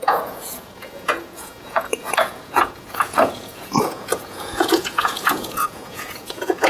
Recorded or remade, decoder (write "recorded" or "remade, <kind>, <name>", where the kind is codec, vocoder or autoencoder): remade, vocoder, Vocos